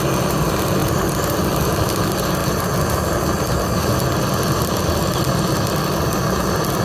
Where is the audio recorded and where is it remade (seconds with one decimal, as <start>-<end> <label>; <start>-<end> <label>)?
0.0-6.8 recorded